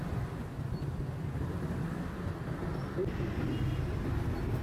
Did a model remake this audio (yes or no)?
no